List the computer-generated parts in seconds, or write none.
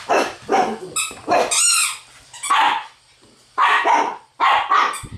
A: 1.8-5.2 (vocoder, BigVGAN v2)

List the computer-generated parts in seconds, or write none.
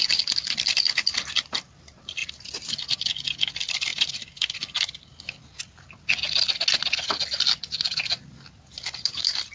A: none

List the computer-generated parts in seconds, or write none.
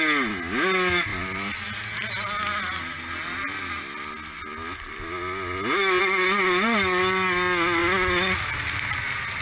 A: none